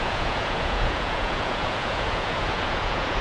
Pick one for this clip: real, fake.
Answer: fake